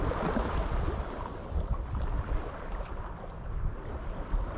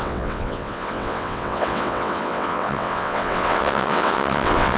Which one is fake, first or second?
second